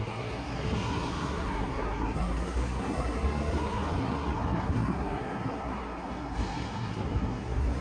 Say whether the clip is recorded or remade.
remade